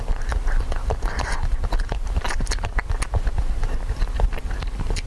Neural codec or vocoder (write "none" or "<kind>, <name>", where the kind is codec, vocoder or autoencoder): none